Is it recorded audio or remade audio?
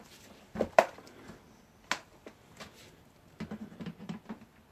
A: recorded